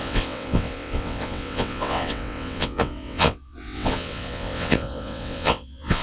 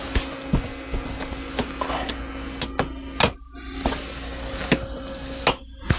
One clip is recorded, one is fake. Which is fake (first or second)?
first